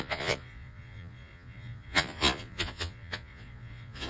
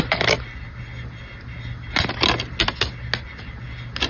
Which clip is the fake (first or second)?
first